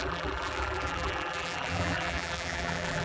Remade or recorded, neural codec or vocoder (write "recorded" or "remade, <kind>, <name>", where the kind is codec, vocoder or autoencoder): remade, vocoder, BigVGAN v2